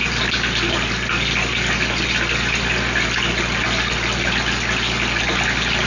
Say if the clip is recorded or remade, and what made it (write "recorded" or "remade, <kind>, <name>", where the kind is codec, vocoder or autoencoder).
recorded